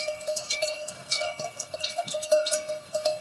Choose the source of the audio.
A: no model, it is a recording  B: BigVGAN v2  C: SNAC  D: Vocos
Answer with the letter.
C